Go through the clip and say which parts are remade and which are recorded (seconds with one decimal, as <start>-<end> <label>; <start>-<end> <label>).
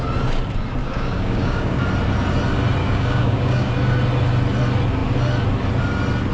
0.0-0.8 recorded; 0.8-1.8 remade; 1.8-2.8 recorded; 2.8-3.7 remade; 3.7-6.3 recorded